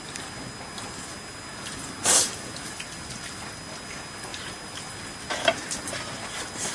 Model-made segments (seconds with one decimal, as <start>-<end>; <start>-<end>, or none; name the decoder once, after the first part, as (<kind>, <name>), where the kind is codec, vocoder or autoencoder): none